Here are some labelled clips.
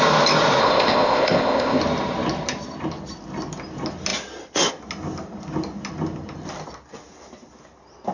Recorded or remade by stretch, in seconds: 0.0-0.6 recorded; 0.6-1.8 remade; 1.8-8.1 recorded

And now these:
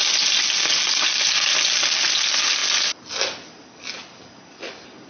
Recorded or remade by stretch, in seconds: 0.0-5.1 recorded

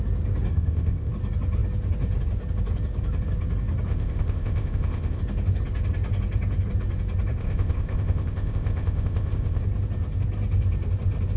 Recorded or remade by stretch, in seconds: 0.0-0.5 recorded; 0.5-1.1 remade; 1.1-3.9 recorded; 3.9-5.2 remade; 5.2-7.4 recorded; 7.4-9.6 remade; 9.6-11.4 recorded

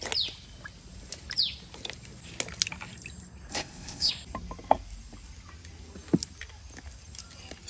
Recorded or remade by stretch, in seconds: 0.0-3.5 recorded; 3.5-4.1 remade; 4.1-7.7 recorded